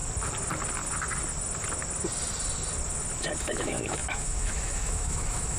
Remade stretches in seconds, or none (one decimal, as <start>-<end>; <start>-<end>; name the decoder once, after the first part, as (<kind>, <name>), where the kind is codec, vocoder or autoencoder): 3.4-5.6 (autoencoder, DAC-VAE)